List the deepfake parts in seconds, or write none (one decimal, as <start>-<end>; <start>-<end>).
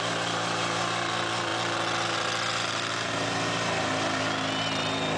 none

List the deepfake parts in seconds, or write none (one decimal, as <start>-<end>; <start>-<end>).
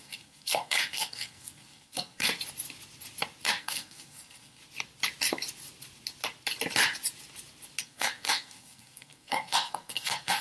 0.0-2.3; 3.5-4.6; 7.8-10.4